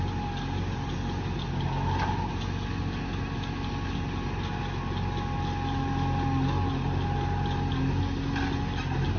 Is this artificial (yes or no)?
no